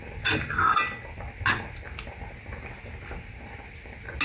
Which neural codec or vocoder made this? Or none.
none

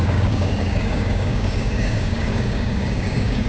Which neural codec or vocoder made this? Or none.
codec, DAC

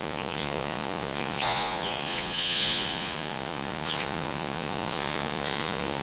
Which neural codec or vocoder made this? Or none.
vocoder, Vocos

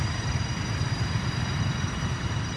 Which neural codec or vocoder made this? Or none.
vocoder, BigVGAN v2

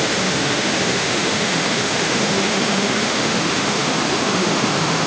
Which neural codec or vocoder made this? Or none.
autoencoder, DAC-VAE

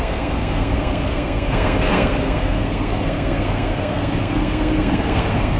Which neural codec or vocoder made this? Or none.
codec, SNAC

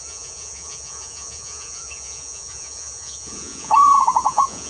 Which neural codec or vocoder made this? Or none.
vocoder, Vocos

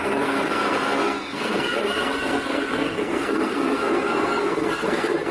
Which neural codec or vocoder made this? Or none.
codec, SNAC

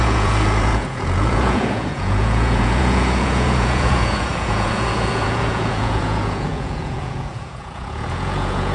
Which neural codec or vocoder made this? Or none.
vocoder, Vocos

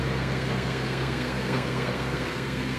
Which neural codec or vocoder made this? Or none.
codec, SNAC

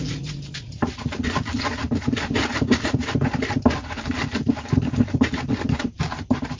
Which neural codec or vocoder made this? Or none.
vocoder, BigVGAN v2